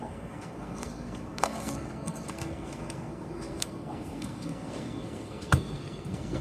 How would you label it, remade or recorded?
remade